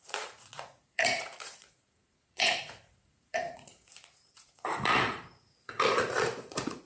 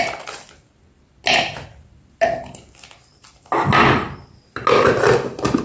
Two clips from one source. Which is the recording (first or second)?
second